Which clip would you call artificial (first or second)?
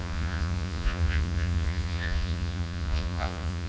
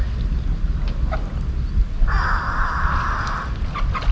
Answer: first